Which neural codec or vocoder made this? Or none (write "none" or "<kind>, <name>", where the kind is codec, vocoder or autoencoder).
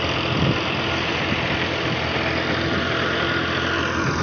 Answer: none